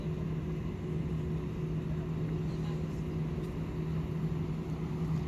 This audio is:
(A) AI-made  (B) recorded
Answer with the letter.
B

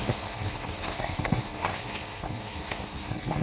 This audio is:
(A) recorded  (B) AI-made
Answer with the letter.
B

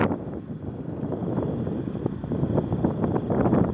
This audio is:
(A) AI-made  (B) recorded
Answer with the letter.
B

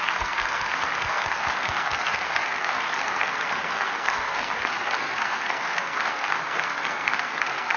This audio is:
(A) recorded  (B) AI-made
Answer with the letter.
B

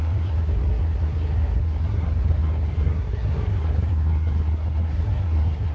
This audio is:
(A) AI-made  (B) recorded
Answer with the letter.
A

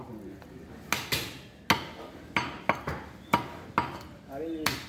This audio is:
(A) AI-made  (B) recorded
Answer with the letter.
B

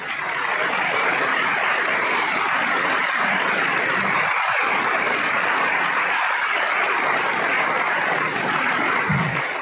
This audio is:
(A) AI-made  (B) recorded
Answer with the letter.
B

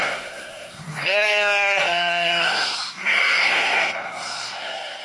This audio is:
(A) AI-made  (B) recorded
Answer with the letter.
A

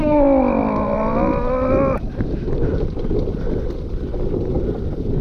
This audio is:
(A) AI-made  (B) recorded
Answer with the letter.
B